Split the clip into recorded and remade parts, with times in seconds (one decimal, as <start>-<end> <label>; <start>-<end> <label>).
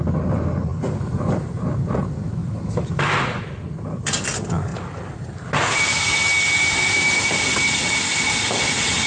0.0-0.7 recorded; 0.7-1.9 remade; 1.9-9.1 recorded